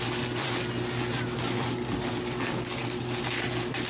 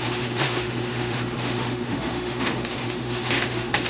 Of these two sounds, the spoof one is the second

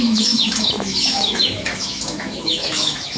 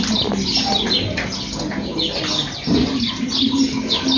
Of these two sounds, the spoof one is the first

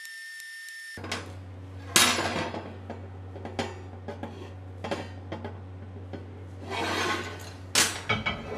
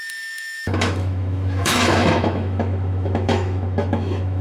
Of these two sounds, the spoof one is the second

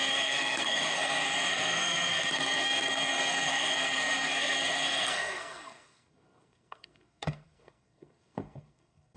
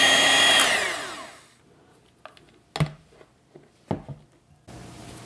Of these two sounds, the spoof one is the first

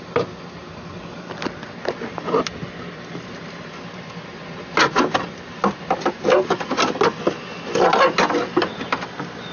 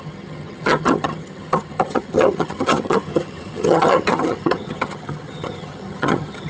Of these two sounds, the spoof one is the second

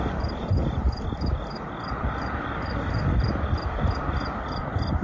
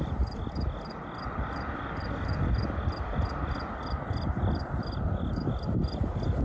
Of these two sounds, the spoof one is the first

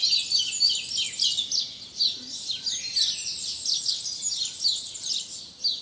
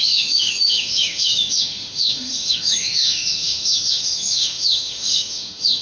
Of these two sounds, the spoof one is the second